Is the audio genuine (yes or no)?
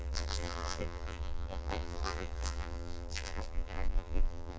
no